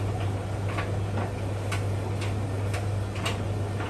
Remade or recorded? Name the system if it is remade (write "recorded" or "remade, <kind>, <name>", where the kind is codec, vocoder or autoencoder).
recorded